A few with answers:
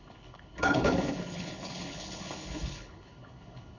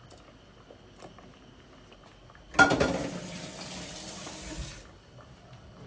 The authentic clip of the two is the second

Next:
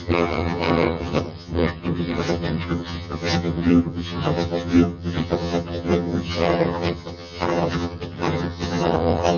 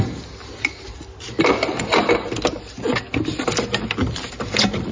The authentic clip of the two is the second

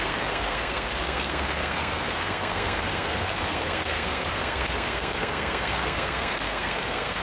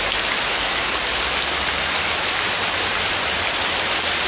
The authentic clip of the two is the second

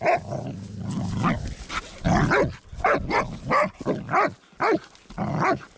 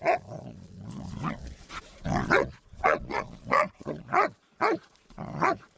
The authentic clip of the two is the first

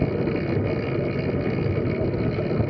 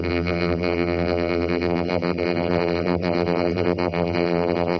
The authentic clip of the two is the first